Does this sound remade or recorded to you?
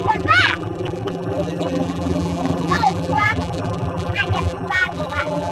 remade